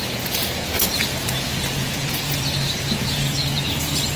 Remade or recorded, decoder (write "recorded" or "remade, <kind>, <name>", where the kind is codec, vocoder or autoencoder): remade, vocoder, Vocos